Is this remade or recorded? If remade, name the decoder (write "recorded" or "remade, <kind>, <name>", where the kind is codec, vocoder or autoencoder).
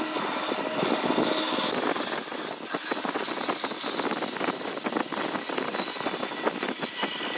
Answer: recorded